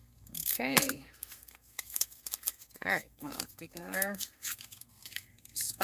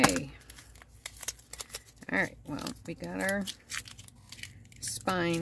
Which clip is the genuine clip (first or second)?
second